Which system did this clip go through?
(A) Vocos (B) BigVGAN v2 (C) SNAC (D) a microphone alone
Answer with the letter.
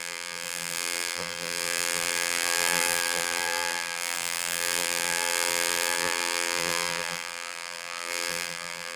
B